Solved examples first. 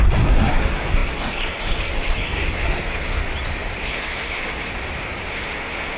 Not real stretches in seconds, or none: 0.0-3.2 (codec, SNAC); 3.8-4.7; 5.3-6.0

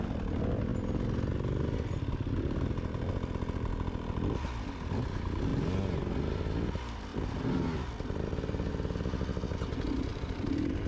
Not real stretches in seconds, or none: 7.1-8.7 (vocoder, BigVGAN v2); 10.1-10.9

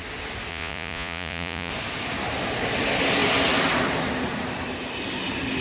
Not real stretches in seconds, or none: 0.5-1.7 (vocoder, Vocos)

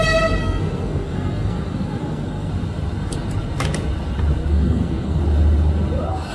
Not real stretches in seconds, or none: 0.4-2.5 (codec, SNAC); 4.4-5.2

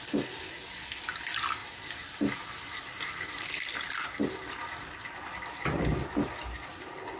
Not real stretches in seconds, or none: none

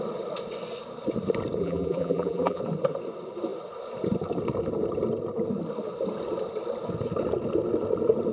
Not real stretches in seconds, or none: 1.6-2.6 (vocoder, BigVGAN v2)

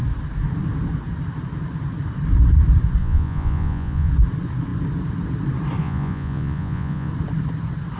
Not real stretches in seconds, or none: 3.0-4.1 (vocoder, Vocos); 5.8-7.1

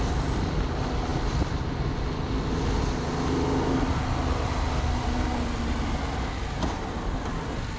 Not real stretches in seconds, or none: none